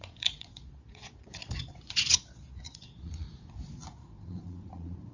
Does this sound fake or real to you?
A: fake